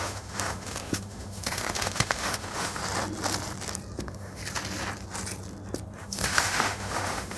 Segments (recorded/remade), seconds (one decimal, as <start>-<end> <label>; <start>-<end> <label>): 0.0-2.8 remade; 2.8-4.0 recorded; 4.0-4.4 remade; 4.4-6.0 recorded; 6.0-7.4 remade

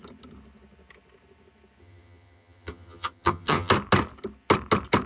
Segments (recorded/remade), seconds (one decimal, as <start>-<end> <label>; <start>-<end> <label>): 0.0-1.8 recorded; 1.8-3.7 remade; 3.7-5.1 recorded